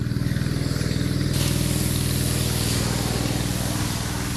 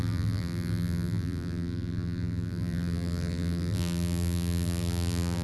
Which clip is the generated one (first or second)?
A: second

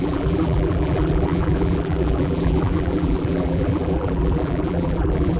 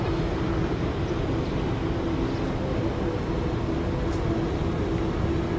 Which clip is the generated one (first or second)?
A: first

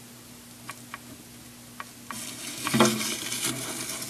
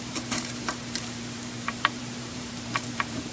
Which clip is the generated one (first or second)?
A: second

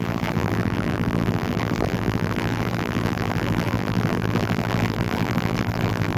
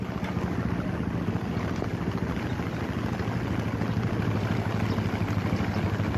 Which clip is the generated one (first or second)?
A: first